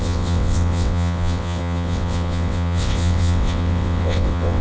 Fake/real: fake